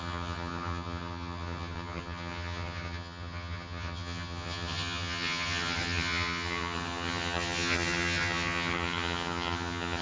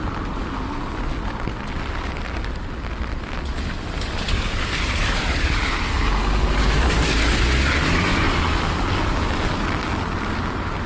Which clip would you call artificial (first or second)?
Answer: first